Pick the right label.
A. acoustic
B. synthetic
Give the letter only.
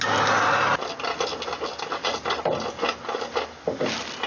A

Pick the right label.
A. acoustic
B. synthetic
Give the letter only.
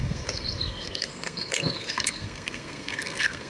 B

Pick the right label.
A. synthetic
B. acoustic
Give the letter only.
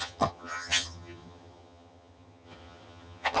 A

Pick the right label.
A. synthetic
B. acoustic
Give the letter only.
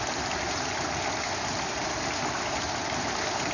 B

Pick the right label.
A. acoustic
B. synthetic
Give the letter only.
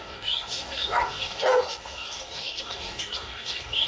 B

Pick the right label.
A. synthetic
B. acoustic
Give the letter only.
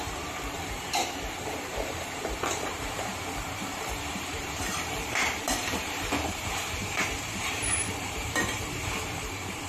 A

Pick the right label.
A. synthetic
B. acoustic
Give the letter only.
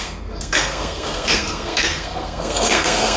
A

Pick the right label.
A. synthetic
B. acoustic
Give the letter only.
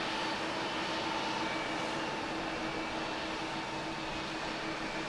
B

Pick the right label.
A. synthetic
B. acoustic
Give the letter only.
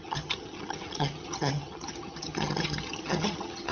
A